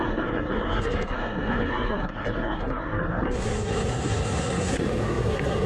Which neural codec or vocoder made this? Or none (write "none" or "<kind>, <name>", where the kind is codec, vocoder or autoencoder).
codec, SNAC